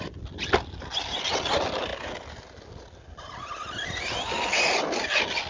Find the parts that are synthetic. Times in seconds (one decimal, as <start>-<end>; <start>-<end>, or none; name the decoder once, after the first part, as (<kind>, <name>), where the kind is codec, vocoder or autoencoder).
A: none